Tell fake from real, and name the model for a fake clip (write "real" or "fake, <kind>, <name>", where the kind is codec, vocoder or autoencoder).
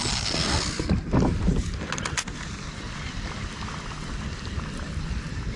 real